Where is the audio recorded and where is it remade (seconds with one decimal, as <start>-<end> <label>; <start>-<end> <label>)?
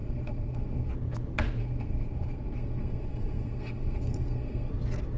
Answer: 0.0-0.9 remade; 0.9-1.6 recorded; 1.6-4.7 remade; 4.7-5.2 recorded